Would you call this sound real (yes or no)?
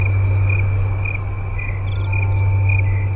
yes